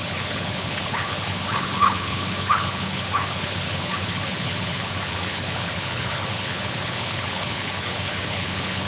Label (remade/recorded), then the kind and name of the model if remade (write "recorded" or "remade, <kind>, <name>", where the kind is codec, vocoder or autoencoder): remade, codec, HILCodec